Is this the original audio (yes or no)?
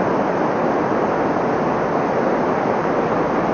yes